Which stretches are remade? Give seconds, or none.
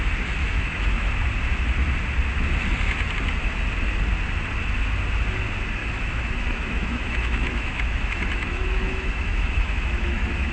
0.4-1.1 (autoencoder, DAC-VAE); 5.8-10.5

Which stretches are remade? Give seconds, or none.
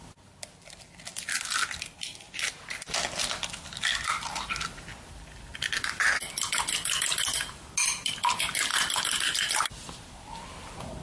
none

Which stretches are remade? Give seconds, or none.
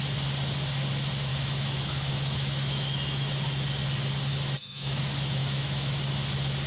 1.3-3.3 (autoencoder, DAC-VAE); 4.3-5.0; 5.4-6.0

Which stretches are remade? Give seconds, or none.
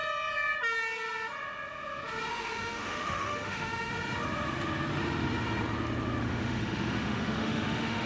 2.3-3.9 (autoencoder, DAC-VAE); 6.2-8.1